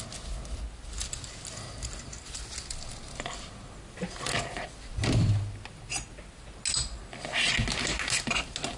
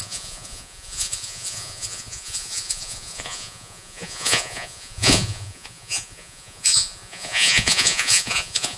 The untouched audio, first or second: first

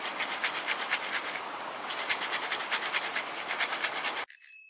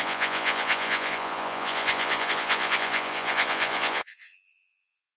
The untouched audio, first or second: first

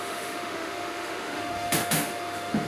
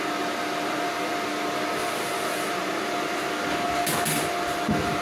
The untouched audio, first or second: second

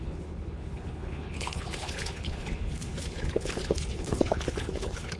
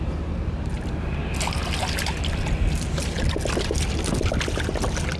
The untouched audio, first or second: second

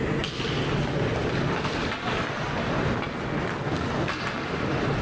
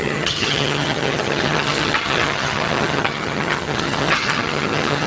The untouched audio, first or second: first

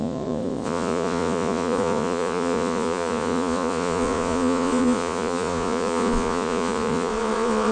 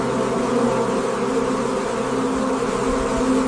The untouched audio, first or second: second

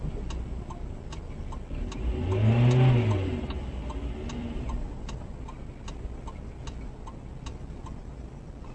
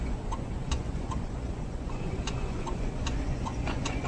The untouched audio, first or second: first